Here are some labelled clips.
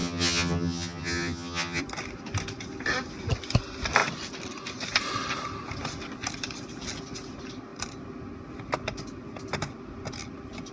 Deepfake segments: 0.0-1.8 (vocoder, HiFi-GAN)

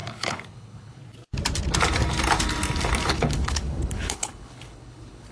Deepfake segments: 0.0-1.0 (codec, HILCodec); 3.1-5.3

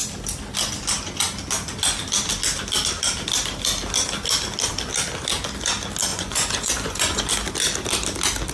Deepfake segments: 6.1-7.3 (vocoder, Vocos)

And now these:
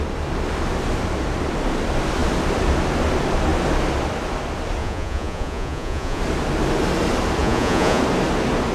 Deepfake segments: 4.8-6.2 (vocoder, Vocos); 7.4-8.0